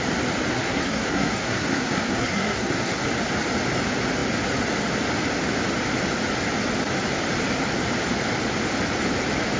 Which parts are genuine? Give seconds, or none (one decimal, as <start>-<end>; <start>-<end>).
0.0-0.5; 3.0-9.6